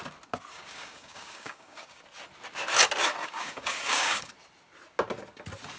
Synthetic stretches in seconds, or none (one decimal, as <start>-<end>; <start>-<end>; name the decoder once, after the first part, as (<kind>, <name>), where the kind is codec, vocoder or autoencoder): 0.5-2.0 (codec, DAC); 3.2-4.3